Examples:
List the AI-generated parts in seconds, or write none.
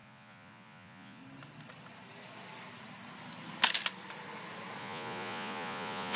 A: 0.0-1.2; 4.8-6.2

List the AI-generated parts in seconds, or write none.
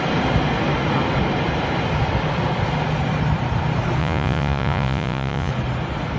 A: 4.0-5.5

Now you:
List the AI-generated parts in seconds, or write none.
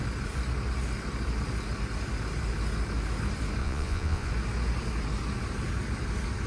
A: 3.6-4.3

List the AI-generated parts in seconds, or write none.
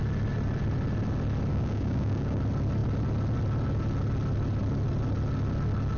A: 1.5-2.4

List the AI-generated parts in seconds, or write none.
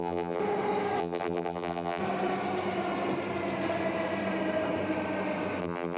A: 0.0-0.4; 1.0-2.0; 5.6-6.0